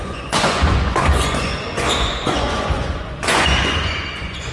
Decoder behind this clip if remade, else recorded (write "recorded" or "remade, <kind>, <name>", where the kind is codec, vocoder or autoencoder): remade, vocoder, Vocos